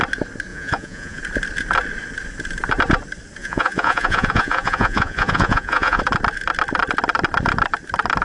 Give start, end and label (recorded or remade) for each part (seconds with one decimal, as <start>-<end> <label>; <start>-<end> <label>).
0.0-0.5 recorded; 0.5-1.2 remade; 1.2-3.4 recorded; 3.4-6.0 remade; 6.0-8.2 recorded